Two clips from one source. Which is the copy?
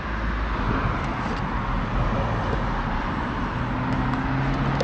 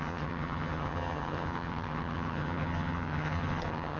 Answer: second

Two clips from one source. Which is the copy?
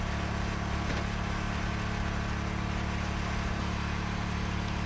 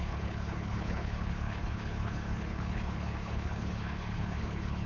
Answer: second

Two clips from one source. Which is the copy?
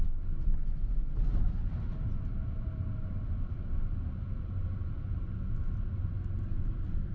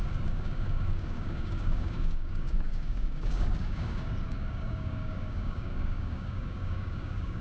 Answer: second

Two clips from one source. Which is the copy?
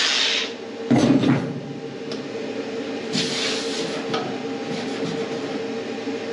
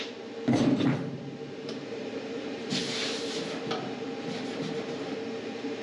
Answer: second